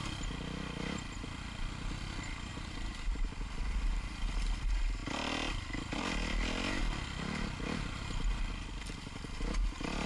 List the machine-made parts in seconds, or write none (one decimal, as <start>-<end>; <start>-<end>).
2.5-3.3